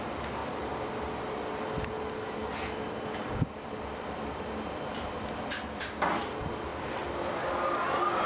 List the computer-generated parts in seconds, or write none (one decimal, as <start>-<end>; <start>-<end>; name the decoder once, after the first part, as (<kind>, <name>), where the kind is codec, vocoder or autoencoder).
0.4-4.9 (vocoder, BigVGAN v2)